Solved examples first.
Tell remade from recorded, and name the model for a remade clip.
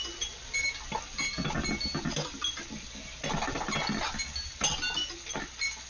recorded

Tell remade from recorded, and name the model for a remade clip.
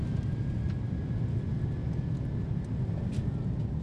recorded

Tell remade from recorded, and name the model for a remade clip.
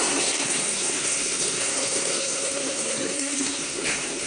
remade, codec, SNAC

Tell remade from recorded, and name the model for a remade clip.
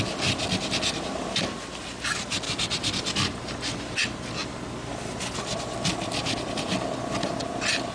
recorded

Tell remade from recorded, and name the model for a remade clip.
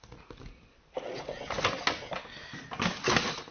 recorded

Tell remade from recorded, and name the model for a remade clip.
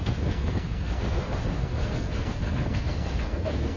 remade, codec, SNAC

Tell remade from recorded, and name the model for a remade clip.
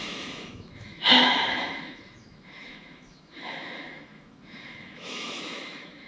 remade, autoencoder, DAC-VAE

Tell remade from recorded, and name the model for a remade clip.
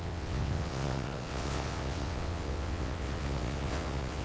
remade, vocoder, WaveNeXt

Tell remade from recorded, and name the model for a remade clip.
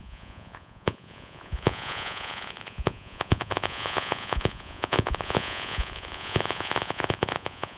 remade, vocoder, Vocos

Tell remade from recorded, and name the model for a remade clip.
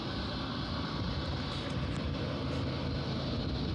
recorded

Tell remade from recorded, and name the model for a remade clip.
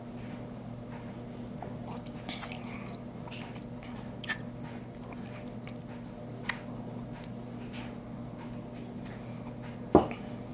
recorded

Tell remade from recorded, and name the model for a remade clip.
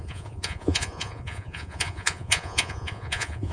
remade, vocoder, Vocos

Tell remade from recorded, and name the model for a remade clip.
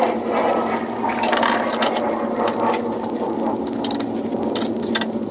recorded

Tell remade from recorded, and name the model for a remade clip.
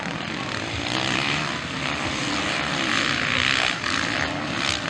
recorded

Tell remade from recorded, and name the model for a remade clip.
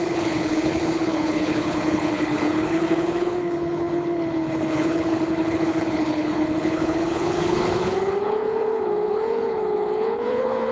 remade, codec, HILCodec